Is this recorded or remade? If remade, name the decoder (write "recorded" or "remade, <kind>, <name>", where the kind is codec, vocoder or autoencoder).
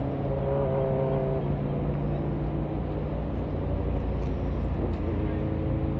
recorded